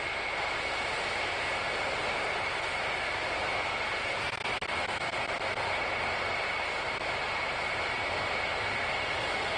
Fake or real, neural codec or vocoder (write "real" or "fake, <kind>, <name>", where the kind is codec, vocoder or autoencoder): real